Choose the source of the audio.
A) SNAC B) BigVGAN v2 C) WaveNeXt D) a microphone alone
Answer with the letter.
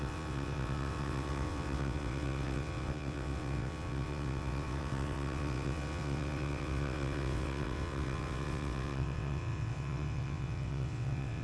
C